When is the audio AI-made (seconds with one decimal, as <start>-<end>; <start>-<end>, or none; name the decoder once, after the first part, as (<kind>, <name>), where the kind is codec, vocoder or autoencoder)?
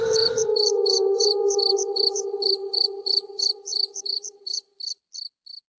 0.0-4.7 (vocoder, BigVGAN v2)